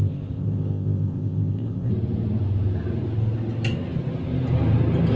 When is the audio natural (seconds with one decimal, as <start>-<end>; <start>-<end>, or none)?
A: 1.9-5.2